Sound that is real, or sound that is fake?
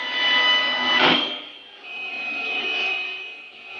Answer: fake